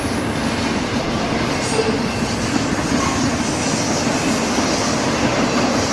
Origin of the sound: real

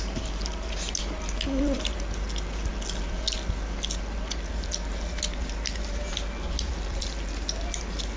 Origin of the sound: real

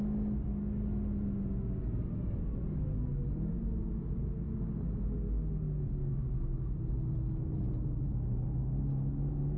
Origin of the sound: real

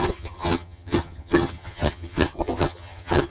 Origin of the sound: fake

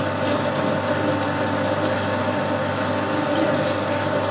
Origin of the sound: real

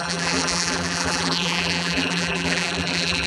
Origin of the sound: fake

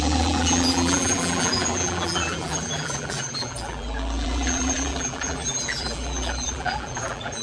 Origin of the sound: fake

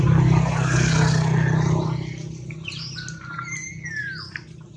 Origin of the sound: real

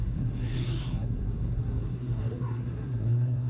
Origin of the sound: fake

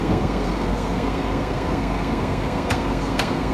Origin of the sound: fake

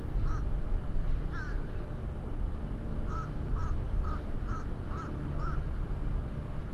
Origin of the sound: real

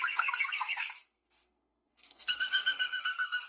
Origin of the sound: fake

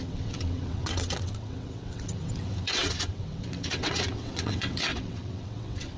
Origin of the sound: fake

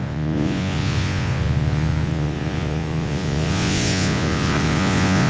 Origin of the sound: fake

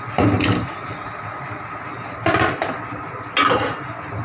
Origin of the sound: real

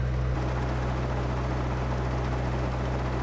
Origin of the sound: real